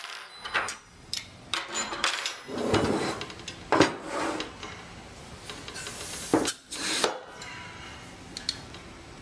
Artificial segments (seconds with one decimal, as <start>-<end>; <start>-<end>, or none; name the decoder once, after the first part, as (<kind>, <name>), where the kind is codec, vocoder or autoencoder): 1.8-3.1 (vocoder, BigVGAN v2)